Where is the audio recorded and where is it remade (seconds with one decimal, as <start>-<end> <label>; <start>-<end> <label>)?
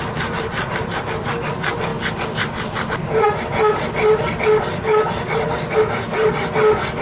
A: 0.0-1.9 recorded; 1.9-5.7 remade; 5.7-7.0 recorded